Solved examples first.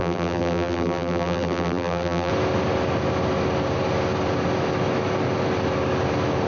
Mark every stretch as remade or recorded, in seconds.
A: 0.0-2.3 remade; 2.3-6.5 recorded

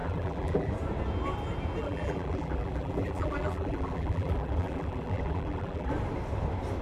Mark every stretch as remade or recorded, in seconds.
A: 0.0-0.7 remade; 0.7-1.8 recorded; 1.8-5.9 remade; 5.9-6.8 recorded

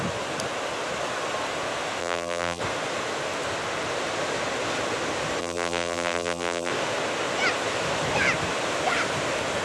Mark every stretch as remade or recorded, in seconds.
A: 0.0-2.0 recorded; 2.0-2.6 remade; 2.6-5.4 recorded; 5.4-6.7 remade; 6.7-9.6 recorded

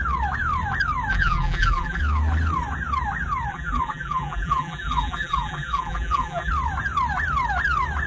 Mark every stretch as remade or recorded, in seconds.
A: 0.0-1.1 recorded; 1.1-2.0 remade; 2.0-3.5 recorded; 3.5-6.5 remade; 6.5-8.1 recorded